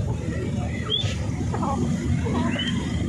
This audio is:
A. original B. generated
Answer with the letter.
B